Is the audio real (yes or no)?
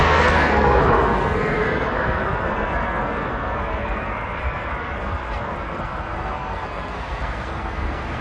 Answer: no